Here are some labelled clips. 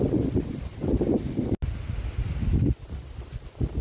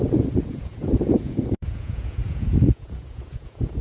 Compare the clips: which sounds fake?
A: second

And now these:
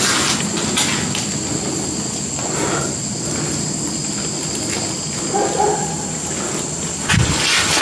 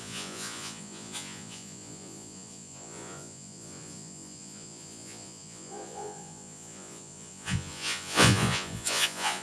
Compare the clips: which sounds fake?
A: second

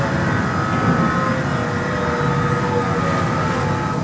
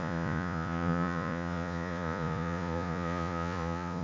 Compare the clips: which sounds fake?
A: second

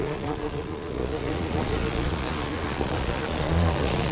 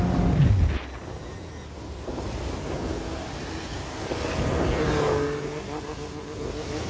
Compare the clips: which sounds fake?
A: first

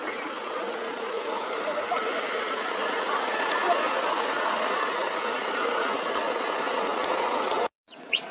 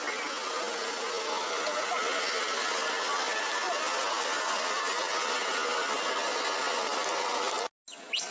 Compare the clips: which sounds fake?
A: first